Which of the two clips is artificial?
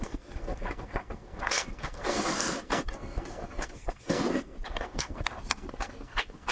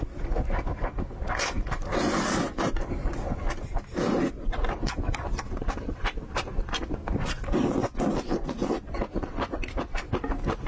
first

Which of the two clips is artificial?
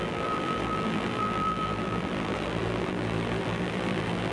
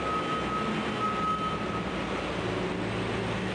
first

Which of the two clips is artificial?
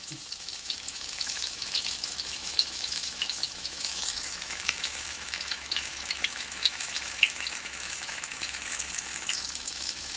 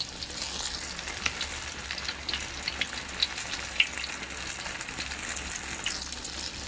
first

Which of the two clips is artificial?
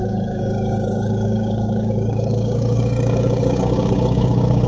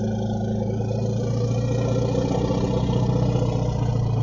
first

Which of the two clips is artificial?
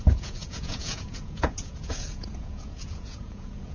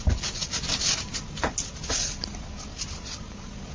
first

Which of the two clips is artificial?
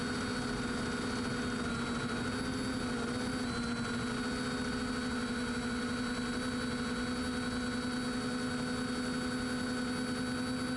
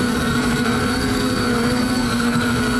second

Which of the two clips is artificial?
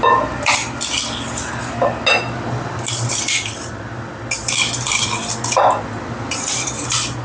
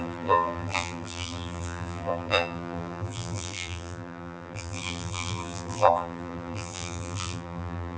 second